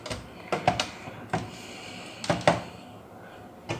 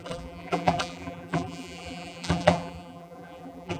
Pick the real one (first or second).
first